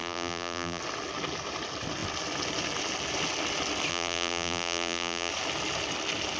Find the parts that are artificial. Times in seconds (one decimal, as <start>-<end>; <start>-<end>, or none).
0.0-0.8; 3.9-5.3